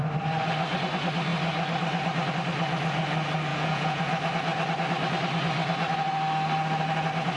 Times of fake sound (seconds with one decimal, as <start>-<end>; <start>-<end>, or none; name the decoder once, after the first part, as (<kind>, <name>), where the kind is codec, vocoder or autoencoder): 3.5-4.0 (vocoder, Vocos)